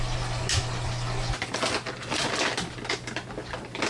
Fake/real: real